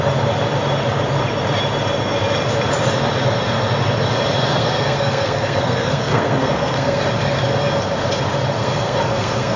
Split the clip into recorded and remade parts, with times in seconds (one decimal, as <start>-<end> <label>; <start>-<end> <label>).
0.0-4.5 recorded; 4.5-7.0 remade; 7.0-8.6 recorded; 8.6-9.6 remade